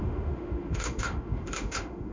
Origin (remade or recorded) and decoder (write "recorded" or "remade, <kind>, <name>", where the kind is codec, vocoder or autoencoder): remade, autoencoder, DAC-VAE